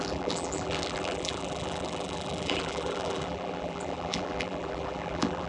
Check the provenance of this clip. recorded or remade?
remade